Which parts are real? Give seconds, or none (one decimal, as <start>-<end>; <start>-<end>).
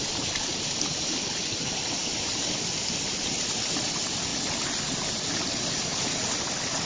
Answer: 0.0-6.9